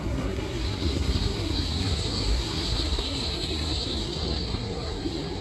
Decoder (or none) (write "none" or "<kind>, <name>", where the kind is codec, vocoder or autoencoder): codec, SNAC